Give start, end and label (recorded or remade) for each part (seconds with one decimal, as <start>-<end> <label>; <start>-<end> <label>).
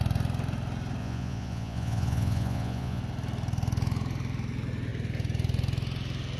0.0-1.0 recorded; 1.0-3.0 remade; 3.0-6.4 recorded